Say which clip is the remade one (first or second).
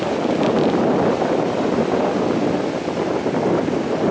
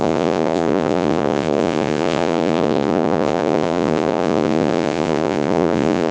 second